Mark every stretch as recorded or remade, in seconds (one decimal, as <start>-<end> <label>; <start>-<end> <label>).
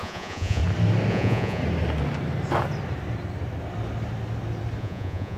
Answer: 0.0-0.6 remade; 0.6-1.1 recorded; 1.1-1.6 remade; 1.6-4.8 recorded; 4.8-5.4 remade